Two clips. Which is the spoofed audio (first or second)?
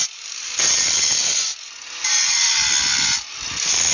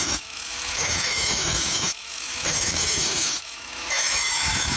second